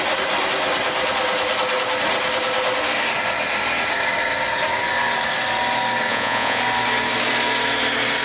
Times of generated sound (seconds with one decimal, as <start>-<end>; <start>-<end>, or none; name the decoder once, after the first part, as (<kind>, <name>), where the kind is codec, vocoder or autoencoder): 6.1-6.6 (vocoder, Vocos)